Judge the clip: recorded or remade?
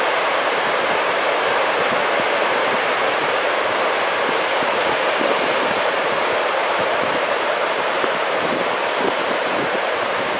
remade